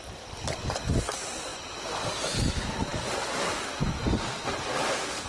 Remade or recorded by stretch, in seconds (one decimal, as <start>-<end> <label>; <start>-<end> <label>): 0.0-5.3 recorded